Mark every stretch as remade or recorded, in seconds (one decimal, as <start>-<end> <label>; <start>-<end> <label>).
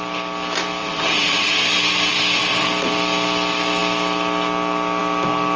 0.0-0.8 recorded; 0.8-1.6 remade; 1.6-5.6 recorded